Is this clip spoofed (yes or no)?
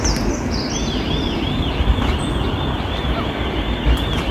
no